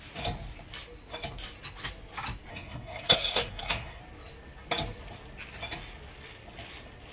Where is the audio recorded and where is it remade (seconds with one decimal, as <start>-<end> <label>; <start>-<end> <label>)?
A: 0.0-2.5 recorded; 2.5-4.0 remade; 4.0-7.1 recorded